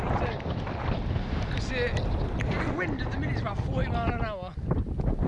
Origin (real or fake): real